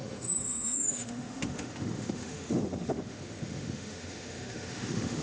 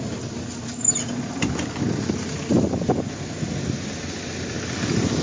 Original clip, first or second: second